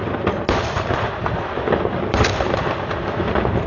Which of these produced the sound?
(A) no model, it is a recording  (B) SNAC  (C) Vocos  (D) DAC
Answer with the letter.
A